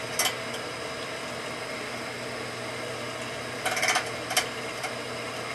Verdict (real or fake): real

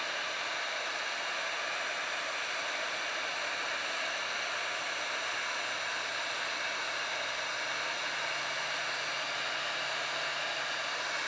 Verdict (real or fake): real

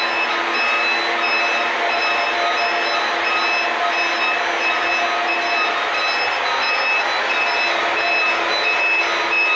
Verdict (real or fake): real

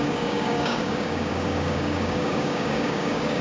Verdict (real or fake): fake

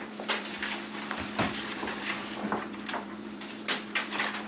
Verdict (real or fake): fake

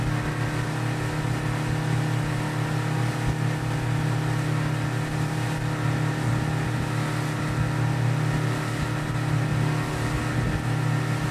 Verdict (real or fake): real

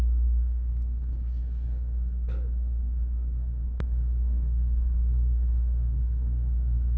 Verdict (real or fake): fake